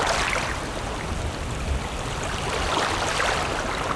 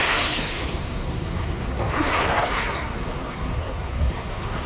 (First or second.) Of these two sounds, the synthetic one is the second